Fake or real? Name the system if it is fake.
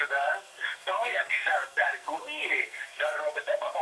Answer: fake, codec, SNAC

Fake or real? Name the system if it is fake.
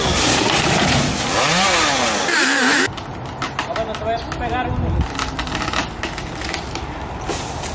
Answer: real